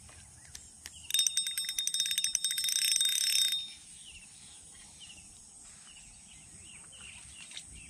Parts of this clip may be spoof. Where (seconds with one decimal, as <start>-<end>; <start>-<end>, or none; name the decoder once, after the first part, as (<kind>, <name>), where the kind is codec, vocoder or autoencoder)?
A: none